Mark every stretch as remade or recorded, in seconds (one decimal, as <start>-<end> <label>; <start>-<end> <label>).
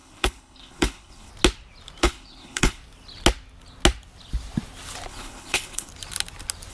0.0-1.3 remade; 1.3-2.0 recorded; 2.0-2.8 remade; 2.8-5.1 recorded; 5.1-5.9 remade; 5.9-6.7 recorded